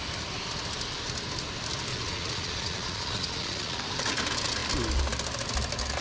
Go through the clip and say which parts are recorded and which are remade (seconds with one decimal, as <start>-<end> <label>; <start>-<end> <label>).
0.0-1.9 recorded; 1.9-3.8 remade; 3.8-6.0 recorded